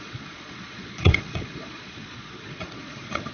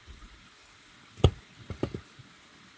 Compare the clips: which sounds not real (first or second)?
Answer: first